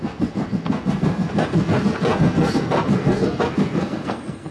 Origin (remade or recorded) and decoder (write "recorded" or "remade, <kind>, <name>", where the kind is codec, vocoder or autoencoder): remade, codec, SNAC